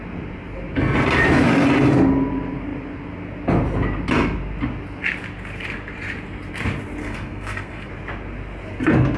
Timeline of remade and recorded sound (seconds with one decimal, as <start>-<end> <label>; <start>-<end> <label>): 0.0-7.0 recorded; 7.0-7.9 remade; 7.9-9.2 recorded